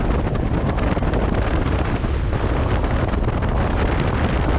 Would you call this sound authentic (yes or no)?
yes